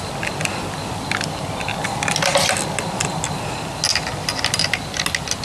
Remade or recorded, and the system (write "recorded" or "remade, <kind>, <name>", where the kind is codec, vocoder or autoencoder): recorded